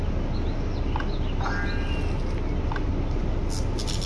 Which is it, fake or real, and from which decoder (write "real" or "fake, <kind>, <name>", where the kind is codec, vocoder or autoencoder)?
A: real